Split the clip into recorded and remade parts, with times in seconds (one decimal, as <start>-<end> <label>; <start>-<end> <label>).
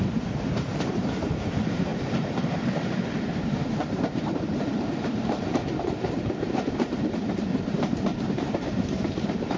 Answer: 0.0-9.6 remade